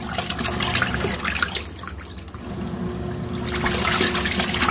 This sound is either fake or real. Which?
real